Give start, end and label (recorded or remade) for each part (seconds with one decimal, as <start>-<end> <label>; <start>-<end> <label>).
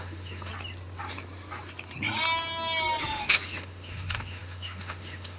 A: 0.0-0.5 remade; 0.5-3.0 recorded; 3.0-5.4 remade